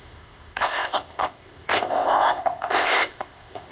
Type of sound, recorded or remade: remade